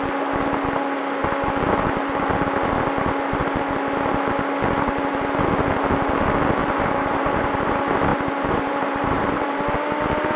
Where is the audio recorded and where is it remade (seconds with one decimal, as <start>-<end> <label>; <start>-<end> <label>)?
0.0-6.6 recorded; 6.6-7.7 remade; 7.7-8.1 recorded; 8.1-9.6 remade; 9.6-10.4 recorded